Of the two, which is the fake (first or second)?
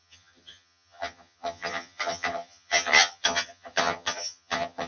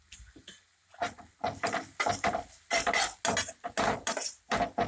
first